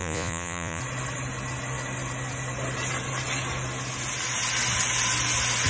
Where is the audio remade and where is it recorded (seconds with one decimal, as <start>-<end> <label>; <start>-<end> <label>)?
0.0-0.8 remade; 0.8-5.7 recorded